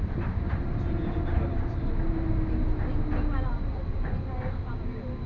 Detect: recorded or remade recorded